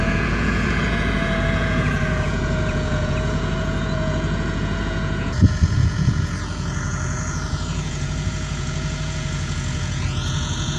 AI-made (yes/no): yes